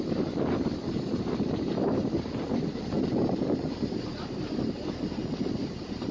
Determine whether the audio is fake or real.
real